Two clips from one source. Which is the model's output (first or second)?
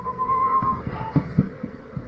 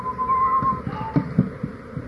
first